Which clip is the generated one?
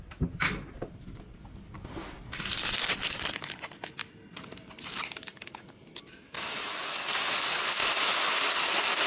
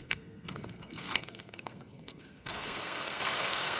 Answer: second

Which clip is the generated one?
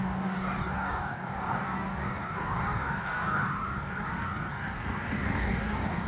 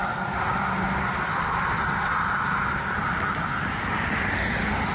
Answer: first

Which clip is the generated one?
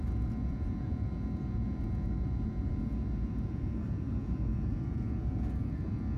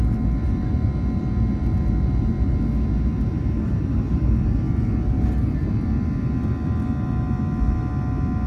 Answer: first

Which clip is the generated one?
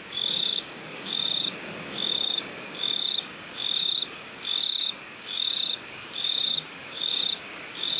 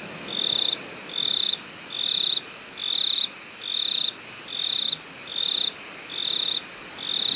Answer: first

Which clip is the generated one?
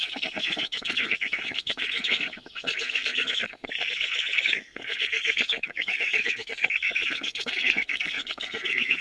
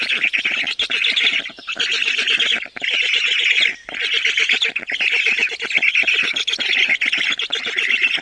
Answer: first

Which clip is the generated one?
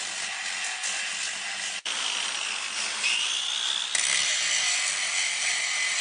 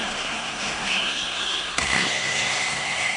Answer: second